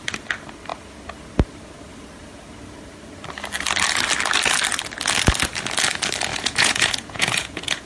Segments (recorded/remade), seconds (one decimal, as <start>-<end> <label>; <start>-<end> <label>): 0.0-6.3 recorded; 6.3-7.9 remade